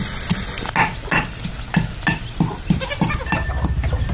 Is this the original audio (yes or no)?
yes